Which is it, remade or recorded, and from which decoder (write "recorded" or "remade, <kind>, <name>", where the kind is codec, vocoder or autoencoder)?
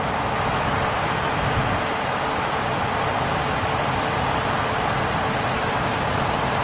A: recorded